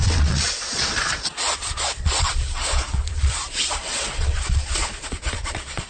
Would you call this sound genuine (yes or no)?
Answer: no